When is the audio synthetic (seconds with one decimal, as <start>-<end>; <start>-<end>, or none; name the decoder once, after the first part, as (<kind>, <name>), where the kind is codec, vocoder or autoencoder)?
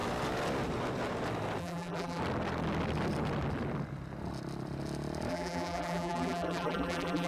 1.6-2.2 (vocoder, BigVGAN v2); 5.3-7.3